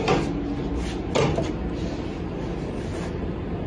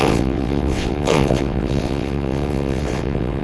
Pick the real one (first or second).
first